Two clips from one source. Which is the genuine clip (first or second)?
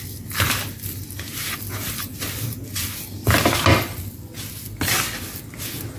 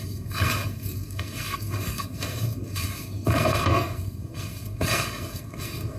first